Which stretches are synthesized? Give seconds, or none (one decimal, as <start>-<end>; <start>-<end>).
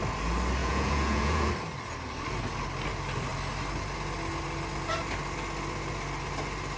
0.6-1.5